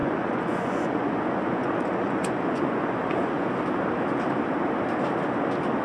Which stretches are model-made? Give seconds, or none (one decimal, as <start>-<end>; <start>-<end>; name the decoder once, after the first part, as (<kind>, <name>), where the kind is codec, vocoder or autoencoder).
0.0-3.5 (vocoder, Vocos)